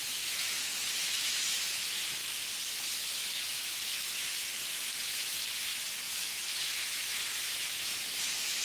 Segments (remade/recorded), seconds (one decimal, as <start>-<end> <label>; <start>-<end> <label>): 0.0-2.2 remade; 2.2-2.7 recorded; 2.7-8.6 remade